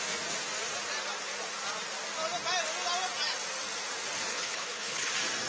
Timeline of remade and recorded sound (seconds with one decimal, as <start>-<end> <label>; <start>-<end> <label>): 0.0-4.3 recorded; 4.3-5.1 remade; 5.1-5.5 recorded